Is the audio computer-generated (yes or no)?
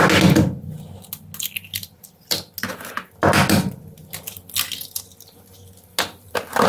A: no